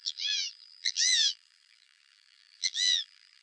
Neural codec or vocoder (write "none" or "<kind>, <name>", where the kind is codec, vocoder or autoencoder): vocoder, BigVGAN v2